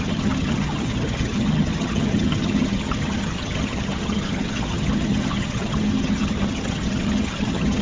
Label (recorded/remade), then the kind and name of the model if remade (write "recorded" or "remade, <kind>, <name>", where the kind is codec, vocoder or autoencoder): remade, vocoder, HiFi-GAN